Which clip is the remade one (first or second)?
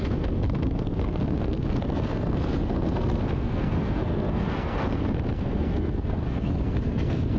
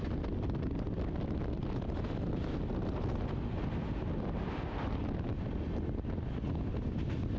first